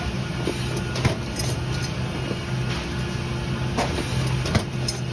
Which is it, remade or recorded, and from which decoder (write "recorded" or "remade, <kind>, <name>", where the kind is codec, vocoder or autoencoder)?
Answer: recorded